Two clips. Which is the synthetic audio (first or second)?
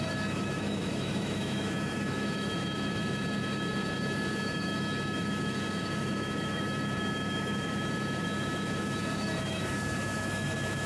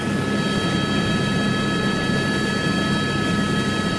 first